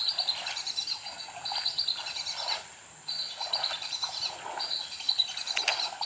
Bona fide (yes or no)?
yes